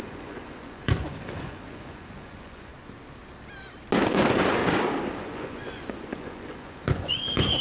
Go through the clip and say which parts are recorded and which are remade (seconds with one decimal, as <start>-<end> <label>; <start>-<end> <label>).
0.0-2.7 remade; 2.7-4.0 recorded; 4.0-4.6 remade; 4.6-5.2 recorded; 5.2-7.6 remade